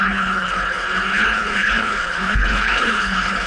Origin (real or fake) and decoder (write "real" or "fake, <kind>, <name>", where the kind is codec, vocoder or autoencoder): fake, codec, HILCodec